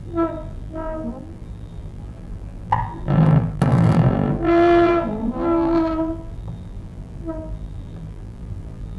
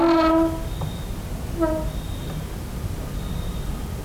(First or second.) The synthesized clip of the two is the first